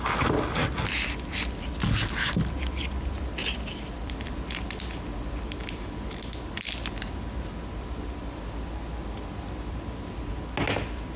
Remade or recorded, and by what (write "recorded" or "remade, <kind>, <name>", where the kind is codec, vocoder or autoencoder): recorded